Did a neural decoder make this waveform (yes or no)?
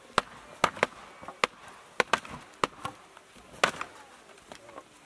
no